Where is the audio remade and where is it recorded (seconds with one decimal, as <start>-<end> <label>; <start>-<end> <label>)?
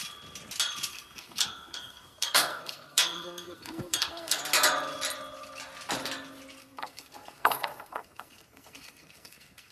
0.0-0.9 recorded; 0.9-4.4 remade; 4.4-6.6 recorded; 6.6-9.7 remade